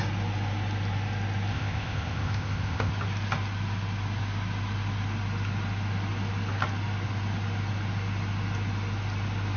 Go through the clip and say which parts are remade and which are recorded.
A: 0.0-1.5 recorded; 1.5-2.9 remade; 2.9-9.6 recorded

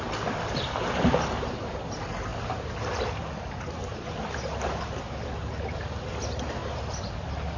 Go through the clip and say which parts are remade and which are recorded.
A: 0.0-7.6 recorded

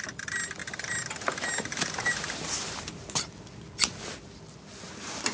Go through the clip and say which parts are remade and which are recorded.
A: 0.0-5.3 recorded

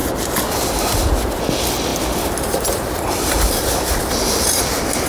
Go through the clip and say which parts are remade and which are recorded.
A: 0.0-5.1 recorded

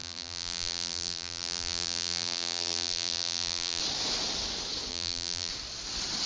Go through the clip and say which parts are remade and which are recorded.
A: 0.0-3.8 remade; 3.8-4.9 recorded; 4.9-5.5 remade; 5.5-6.3 recorded